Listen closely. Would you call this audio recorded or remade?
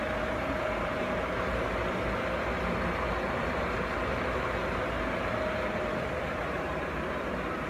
remade